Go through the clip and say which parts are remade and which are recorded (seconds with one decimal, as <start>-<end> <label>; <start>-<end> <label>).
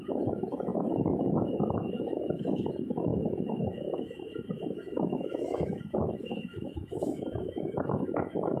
0.0-8.6 remade